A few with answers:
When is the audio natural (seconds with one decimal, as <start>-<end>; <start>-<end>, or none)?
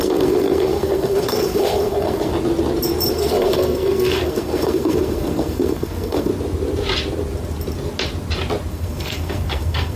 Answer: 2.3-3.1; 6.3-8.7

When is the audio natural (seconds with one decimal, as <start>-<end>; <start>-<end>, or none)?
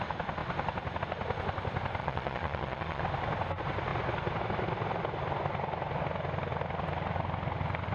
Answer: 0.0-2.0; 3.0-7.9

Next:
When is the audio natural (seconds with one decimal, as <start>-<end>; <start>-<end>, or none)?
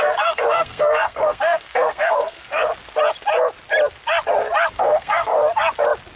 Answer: 2.7-4.7; 5.3-6.2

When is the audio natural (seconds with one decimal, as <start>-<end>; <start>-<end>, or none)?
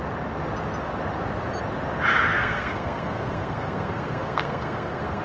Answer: 0.0-2.3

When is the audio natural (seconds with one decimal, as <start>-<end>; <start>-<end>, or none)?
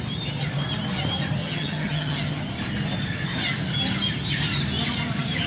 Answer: 0.0-1.4; 2.4-5.5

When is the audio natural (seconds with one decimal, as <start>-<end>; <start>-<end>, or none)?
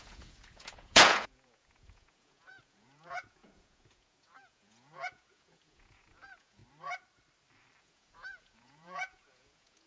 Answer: 6.6-7.8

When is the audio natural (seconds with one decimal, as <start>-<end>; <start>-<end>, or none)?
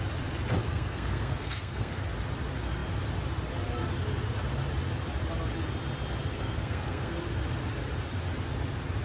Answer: 0.0-0.6; 2.0-6.3; 7.2-9.0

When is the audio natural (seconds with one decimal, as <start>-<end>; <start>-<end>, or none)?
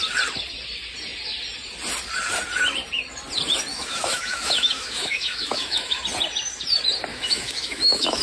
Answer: 0.0-3.7; 6.0-7.1